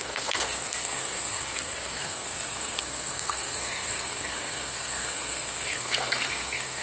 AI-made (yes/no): yes